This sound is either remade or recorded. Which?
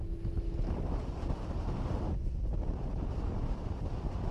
recorded